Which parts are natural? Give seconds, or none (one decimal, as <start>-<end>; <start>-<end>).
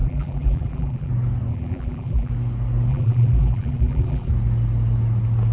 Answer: 1.1-1.5; 2.3-2.9; 4.3-5.5